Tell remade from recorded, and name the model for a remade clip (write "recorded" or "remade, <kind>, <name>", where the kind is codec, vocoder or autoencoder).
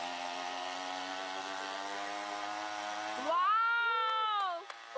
recorded